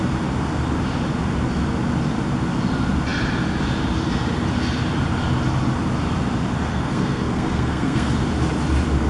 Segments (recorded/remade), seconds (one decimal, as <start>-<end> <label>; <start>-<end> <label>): 0.0-6.7 recorded; 6.7-8.1 remade; 8.1-9.1 recorded